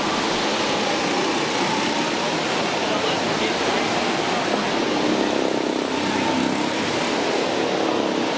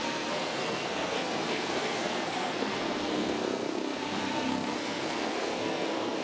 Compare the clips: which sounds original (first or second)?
first